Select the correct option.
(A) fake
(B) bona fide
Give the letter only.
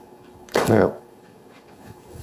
A